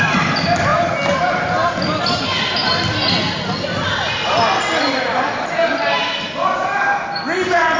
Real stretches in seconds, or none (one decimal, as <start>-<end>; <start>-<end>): 0.0-7.8